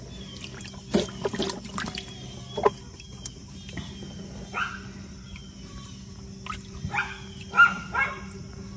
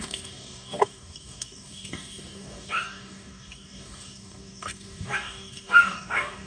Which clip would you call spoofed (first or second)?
second